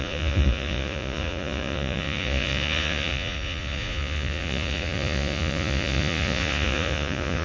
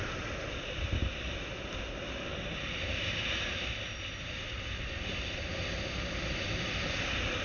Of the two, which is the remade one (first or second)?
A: first